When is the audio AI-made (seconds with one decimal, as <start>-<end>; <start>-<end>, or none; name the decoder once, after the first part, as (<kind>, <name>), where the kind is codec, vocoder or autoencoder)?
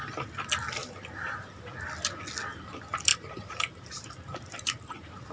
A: 0.8-1.6 (vocoder, BigVGAN v2); 3.1-5.3